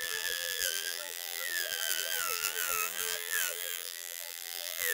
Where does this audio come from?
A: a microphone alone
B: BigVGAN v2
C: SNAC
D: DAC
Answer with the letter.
B